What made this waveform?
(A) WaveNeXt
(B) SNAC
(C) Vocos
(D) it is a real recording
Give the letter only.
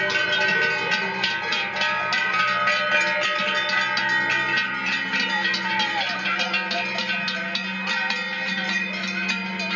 D